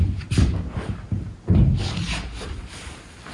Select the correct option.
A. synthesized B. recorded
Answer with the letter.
B